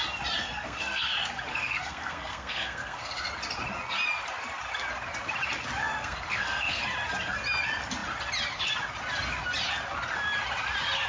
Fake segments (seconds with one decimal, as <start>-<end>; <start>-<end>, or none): 0.4-1.1; 1.5-3.3; 5.8-6.8